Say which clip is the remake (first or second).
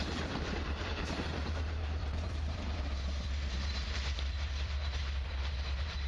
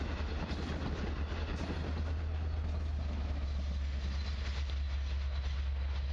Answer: first